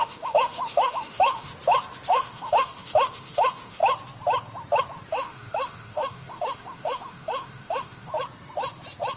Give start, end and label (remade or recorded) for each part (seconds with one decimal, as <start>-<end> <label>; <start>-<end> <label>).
0.0-1.5 remade; 1.5-2.1 recorded; 2.1-3.8 remade; 3.8-5.1 recorded; 5.1-8.1 remade; 8.1-9.2 recorded